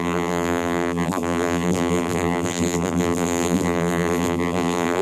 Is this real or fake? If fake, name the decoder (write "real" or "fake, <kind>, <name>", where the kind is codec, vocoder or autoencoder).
fake, vocoder, BigVGAN v2